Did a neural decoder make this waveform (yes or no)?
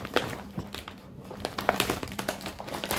yes